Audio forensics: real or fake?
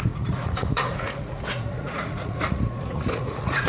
fake